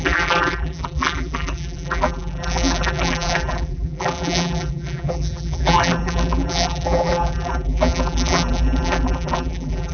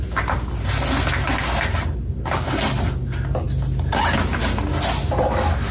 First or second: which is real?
second